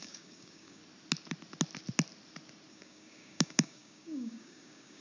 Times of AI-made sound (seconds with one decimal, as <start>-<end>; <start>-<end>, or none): 0.0-0.8; 2.7-5.0